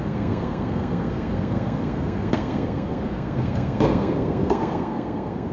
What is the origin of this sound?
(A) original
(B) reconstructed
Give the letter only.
B